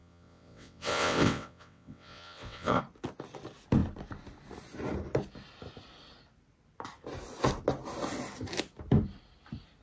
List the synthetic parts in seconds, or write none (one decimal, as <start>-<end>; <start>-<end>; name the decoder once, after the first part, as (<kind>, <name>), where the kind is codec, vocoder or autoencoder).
0.0-2.8 (vocoder, WaveNeXt)